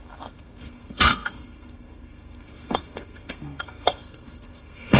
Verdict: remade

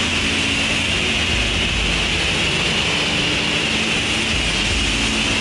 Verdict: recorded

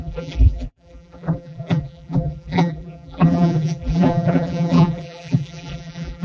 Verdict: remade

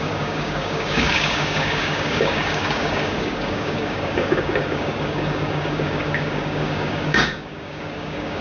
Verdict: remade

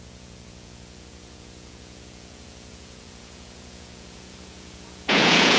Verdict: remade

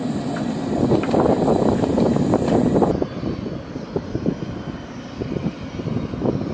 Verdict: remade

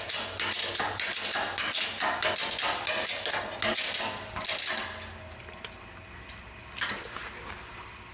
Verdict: recorded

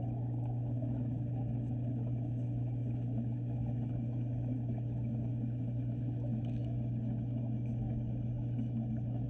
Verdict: remade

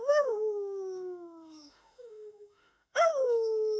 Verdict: remade